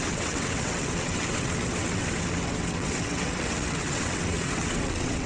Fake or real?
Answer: fake